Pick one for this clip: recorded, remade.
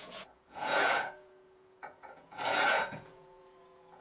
remade